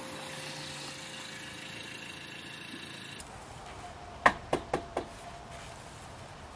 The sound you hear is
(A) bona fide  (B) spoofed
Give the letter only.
A